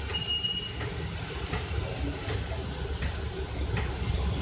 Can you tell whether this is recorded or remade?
recorded